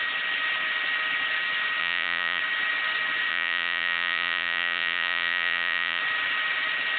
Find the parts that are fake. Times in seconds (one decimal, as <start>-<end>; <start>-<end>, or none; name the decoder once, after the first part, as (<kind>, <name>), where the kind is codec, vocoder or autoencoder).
1.8-2.4 (vocoder, Vocos); 3.3-6.0